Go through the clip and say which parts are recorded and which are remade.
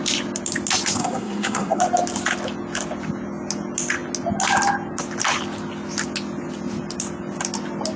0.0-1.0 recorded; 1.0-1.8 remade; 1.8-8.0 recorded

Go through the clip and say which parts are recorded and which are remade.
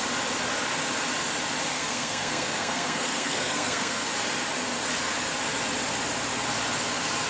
0.0-1.7 recorded; 1.7-4.1 remade; 4.1-7.3 recorded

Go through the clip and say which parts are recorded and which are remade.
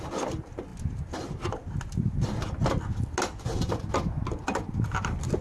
0.0-5.4 recorded